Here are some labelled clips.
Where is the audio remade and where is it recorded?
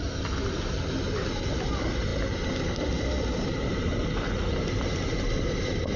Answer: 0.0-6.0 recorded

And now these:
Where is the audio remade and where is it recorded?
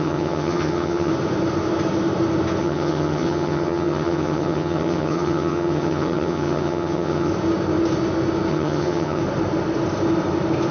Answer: 0.0-1.1 remade; 1.1-2.6 recorded; 2.6-7.3 remade; 7.3-8.5 recorded; 8.5-9.2 remade; 9.2-10.7 recorded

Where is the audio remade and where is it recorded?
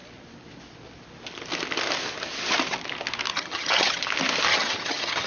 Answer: 0.0-3.3 recorded; 3.3-4.0 remade; 4.0-4.5 recorded; 4.5-5.3 remade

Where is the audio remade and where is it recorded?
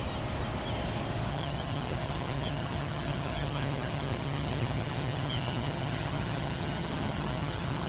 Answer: 0.0-1.3 recorded; 1.3-7.9 remade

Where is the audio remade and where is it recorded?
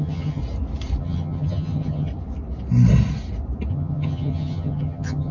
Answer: 0.0-0.4 remade; 0.4-1.0 recorded; 1.0-2.1 remade; 2.1-3.7 recorded; 3.7-5.3 remade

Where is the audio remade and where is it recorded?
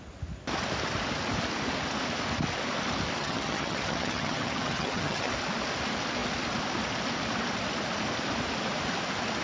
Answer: 0.0-3.2 recorded; 3.2-5.3 remade; 5.3-9.4 recorded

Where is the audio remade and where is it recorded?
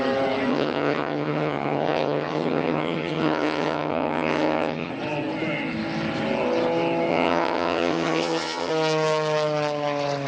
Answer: 0.0-0.5 recorded; 0.5-4.9 remade; 4.9-7.1 recorded; 7.1-8.7 remade; 8.7-10.3 recorded